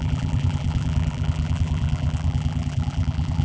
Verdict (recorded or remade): remade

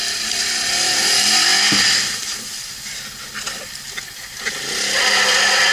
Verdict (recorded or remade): recorded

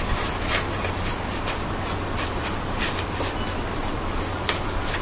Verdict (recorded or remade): remade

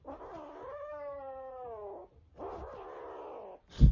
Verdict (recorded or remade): remade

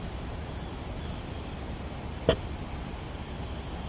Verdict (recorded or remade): recorded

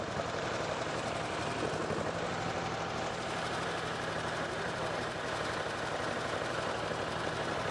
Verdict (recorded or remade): remade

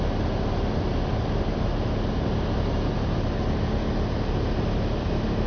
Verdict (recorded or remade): recorded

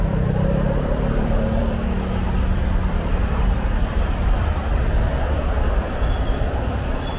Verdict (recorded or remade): remade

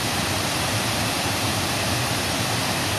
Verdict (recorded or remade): remade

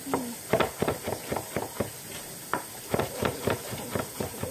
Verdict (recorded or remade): recorded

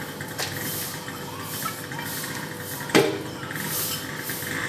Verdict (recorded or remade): remade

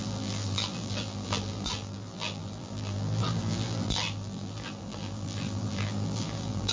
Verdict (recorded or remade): remade